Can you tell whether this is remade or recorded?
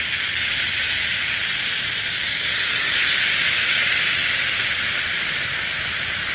recorded